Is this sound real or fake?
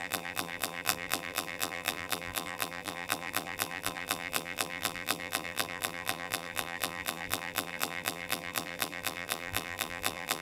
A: fake